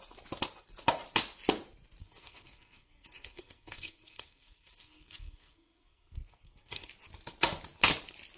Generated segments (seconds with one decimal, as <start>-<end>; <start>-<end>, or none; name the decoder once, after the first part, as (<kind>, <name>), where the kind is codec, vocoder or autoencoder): 2.0-6.9 (codec, SNAC)